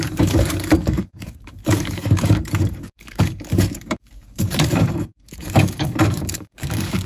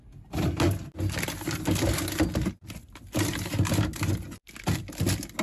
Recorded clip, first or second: second